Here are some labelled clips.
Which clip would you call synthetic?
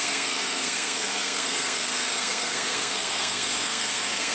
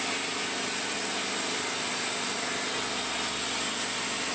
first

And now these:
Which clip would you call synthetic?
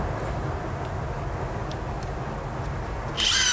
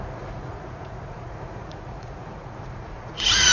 second